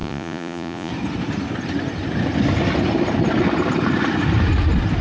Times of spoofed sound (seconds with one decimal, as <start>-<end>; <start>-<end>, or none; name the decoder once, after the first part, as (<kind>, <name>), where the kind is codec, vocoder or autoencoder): 0.0-0.9 (vocoder, Vocos)